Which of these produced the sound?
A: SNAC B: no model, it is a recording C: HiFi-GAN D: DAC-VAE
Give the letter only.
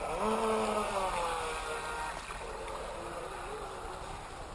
B